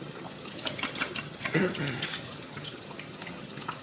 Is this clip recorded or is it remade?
remade